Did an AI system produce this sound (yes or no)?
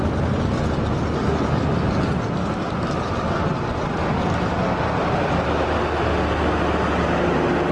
no